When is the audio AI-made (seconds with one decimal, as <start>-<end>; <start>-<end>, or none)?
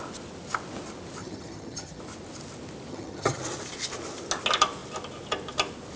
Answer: 1.2-2.0; 2.9-3.4